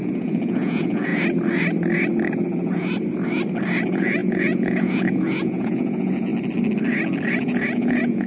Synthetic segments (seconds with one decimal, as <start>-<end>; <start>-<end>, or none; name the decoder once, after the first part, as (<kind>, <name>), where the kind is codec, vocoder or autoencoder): 0.0-1.1 (vocoder, Vocos); 3.8-6.3; 7.3-8.3